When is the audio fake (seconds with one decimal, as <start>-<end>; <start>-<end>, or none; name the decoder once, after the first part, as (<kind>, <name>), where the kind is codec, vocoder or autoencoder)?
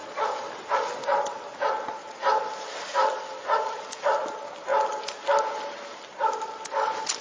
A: none